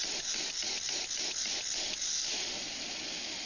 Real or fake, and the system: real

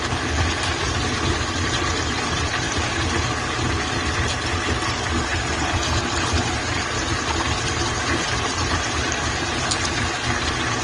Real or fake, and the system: real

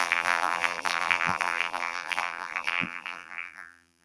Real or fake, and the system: fake, vocoder, BigVGAN v2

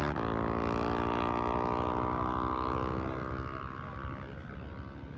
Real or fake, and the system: real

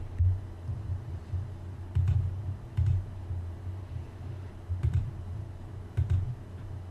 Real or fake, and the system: fake, vocoder, BigVGAN v2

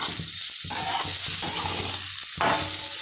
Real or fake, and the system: real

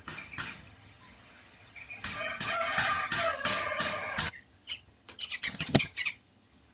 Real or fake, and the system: fake, vocoder, HiFi-GAN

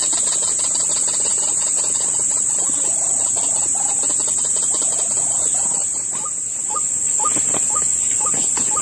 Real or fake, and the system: real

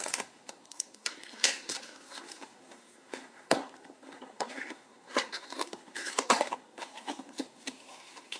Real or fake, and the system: fake, codec, SNAC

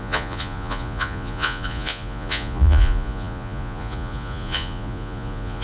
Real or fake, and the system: fake, vocoder, Vocos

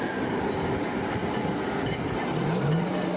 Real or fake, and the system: real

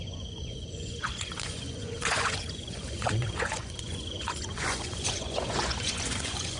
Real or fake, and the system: fake, vocoder, Vocos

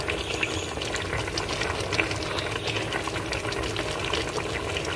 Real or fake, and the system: real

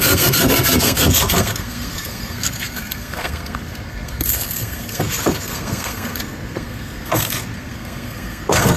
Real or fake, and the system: fake, codec, SNAC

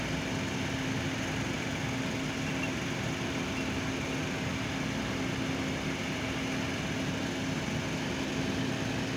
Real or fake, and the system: real